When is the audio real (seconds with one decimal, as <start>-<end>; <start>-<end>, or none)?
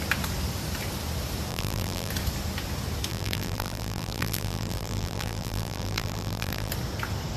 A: 0.0-1.5; 2.1-3.1; 6.7-7.4